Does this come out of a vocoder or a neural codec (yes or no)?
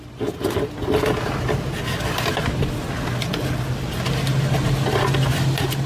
no